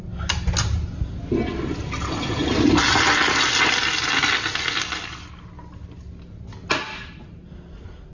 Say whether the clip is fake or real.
real